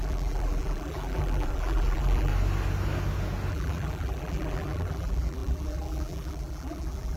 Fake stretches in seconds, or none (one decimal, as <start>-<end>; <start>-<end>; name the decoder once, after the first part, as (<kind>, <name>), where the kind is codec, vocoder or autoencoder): 0.0-2.3 (vocoder, BigVGAN v2); 3.5-7.2